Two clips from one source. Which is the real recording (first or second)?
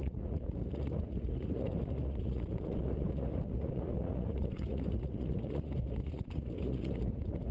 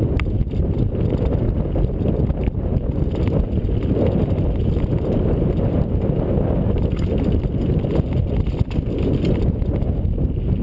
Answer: second